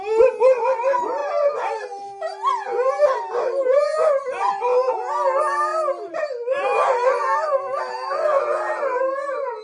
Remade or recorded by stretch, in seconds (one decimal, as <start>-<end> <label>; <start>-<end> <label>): 0.0-9.6 recorded